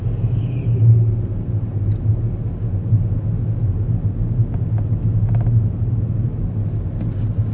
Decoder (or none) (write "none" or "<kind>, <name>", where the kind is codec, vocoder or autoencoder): none